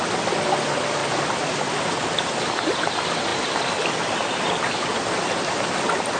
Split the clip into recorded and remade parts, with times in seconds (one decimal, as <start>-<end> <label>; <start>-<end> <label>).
0.0-1.0 recorded; 1.0-1.6 remade; 1.6-3.3 recorded; 3.3-4.1 remade; 4.1-6.2 recorded

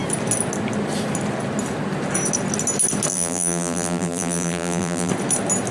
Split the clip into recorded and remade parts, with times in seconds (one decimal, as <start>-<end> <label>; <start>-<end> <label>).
0.0-3.1 recorded; 3.1-5.1 remade; 5.1-5.7 recorded

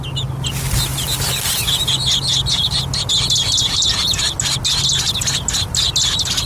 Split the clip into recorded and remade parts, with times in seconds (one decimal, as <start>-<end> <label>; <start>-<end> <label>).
0.0-6.5 recorded

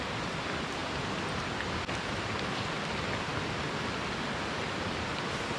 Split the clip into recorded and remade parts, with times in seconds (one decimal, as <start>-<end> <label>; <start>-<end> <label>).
0.0-0.8 recorded; 0.8-1.4 remade; 1.4-5.6 recorded

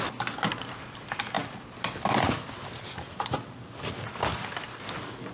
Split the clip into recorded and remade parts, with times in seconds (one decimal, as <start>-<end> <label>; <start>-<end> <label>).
0.0-5.3 recorded

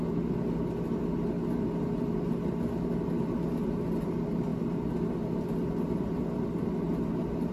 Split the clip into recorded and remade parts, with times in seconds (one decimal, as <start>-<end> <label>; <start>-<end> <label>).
0.0-7.5 recorded

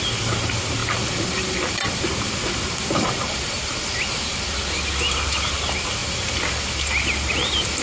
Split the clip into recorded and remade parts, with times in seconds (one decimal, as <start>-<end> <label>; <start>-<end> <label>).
0.0-0.8 recorded; 0.8-1.9 remade; 1.9-6.0 recorded; 6.0-6.7 remade; 6.7-7.8 recorded

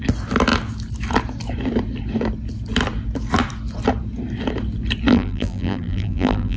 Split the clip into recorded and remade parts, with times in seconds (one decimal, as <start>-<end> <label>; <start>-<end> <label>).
0.0-5.1 recorded; 5.1-6.6 remade